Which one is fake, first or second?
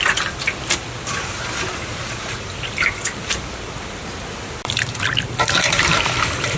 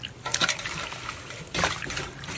first